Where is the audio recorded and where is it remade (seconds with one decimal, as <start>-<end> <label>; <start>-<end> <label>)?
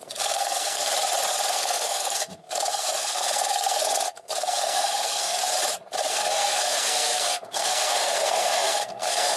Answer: 0.0-0.9 remade; 0.9-1.5 recorded; 1.5-5.4 remade; 5.4-6.1 recorded; 6.1-9.4 remade